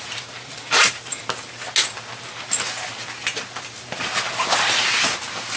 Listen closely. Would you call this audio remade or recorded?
recorded